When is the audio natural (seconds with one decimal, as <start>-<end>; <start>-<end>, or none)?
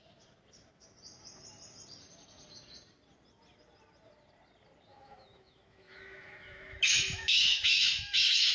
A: 0.0-4.9